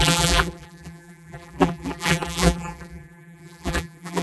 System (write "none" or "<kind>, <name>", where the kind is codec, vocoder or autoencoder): vocoder, BigVGAN v2